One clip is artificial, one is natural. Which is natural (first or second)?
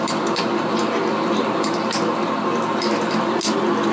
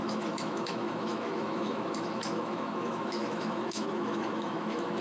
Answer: first